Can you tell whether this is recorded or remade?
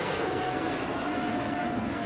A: remade